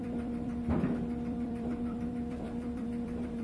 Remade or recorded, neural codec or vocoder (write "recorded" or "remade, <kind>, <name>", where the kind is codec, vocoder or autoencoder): remade, vocoder, BigVGAN v2